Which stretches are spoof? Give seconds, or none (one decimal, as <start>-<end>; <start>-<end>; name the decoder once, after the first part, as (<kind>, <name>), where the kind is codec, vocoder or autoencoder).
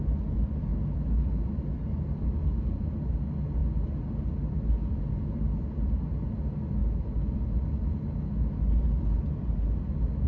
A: none